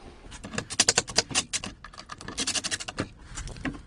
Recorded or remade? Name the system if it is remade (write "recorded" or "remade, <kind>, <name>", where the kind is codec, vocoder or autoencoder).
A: recorded